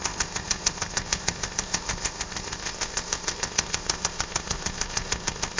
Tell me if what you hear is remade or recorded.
remade